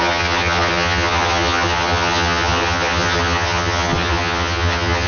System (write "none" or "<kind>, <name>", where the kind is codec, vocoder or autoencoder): vocoder, HiFi-GAN